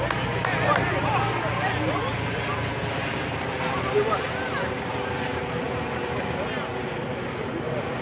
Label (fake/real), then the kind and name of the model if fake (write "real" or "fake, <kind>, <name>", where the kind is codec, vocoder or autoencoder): real